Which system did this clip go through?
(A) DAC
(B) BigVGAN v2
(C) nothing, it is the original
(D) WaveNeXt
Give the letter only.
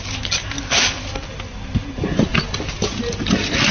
C